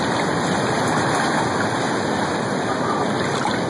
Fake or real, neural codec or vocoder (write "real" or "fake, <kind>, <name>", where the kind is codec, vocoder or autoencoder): real